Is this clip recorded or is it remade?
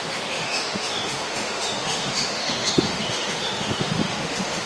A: remade